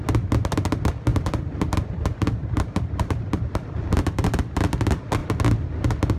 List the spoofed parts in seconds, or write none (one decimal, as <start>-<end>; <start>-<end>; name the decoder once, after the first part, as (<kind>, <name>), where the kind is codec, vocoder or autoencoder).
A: 1.1-4.8 (vocoder, BigVGAN v2)